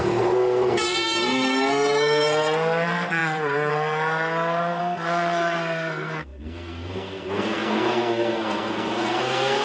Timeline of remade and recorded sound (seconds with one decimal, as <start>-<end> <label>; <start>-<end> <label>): 0.0-9.6 remade